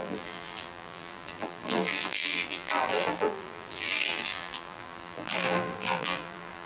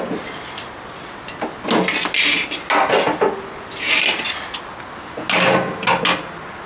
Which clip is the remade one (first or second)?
first